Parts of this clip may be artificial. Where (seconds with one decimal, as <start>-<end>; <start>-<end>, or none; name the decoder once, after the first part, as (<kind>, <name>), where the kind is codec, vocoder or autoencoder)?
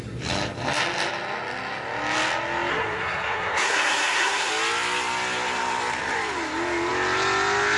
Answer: 2.7-4.5 (codec, SNAC)